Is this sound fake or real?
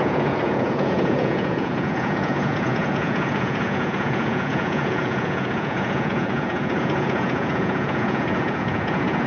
fake